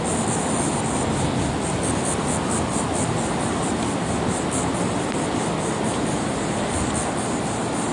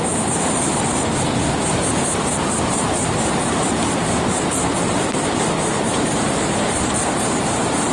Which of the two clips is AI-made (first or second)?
second